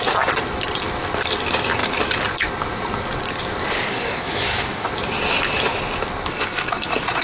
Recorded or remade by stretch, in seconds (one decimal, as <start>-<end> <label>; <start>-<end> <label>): 0.0-3.9 recorded; 3.9-4.9 remade; 4.9-7.2 recorded